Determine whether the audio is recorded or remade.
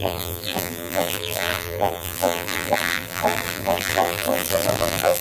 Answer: remade